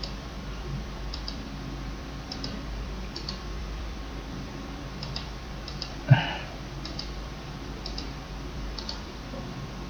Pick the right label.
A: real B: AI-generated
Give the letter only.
B